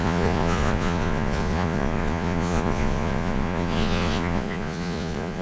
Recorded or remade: remade